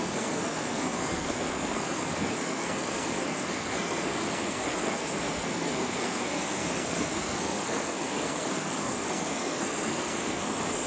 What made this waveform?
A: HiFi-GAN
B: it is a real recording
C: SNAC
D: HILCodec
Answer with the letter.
C